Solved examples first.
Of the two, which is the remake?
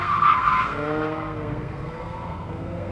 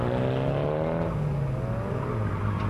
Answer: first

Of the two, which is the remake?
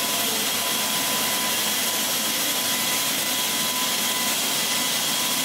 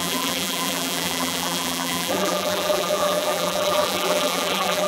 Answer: second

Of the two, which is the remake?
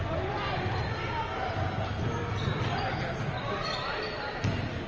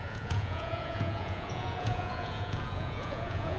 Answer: second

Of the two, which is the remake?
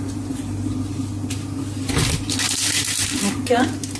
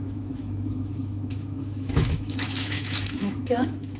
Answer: second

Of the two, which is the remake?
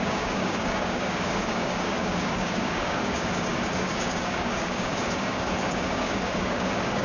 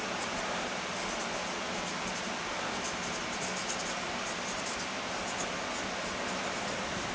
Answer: first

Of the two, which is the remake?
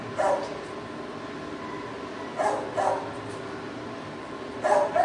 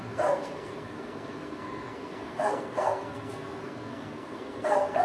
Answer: second